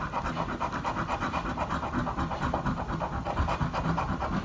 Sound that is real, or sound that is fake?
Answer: real